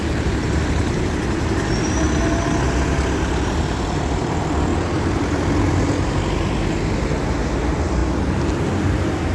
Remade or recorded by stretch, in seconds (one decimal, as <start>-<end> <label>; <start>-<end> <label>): 0.0-4.7 recorded; 4.7-5.4 remade; 5.4-9.3 recorded